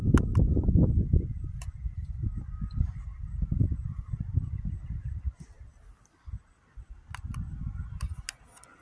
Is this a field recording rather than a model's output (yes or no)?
yes